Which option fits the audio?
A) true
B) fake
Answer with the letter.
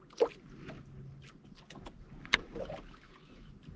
A